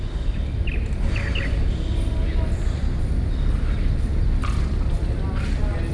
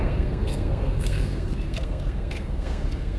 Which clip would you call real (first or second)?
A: first